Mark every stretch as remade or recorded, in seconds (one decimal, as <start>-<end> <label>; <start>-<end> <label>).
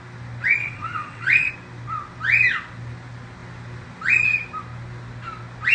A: 0.0-0.6 recorded; 0.6-1.5 remade; 1.5-5.7 recorded